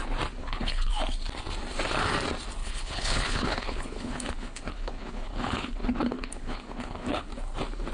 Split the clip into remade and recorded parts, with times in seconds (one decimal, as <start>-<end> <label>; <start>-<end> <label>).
0.0-0.4 recorded; 0.4-0.9 remade; 0.9-2.6 recorded; 2.6-7.3 remade; 7.3-7.9 recorded